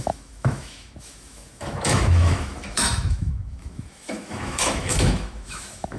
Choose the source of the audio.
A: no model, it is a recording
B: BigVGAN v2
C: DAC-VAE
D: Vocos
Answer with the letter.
C